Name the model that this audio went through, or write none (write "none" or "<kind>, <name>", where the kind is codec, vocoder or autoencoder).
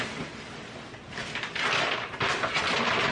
none